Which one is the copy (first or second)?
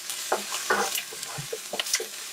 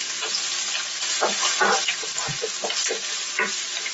first